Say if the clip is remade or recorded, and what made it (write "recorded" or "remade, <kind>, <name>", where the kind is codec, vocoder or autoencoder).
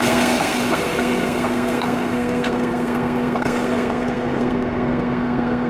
remade, codec, SNAC